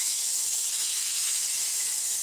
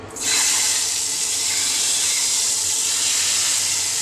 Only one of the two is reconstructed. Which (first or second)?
first